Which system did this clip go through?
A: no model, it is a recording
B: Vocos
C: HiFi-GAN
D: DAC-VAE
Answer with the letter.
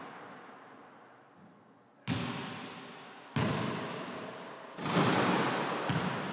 A